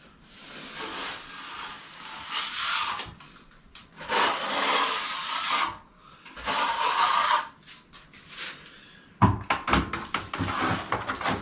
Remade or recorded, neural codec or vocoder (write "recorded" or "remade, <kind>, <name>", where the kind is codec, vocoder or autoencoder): recorded